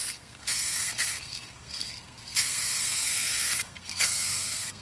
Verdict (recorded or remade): remade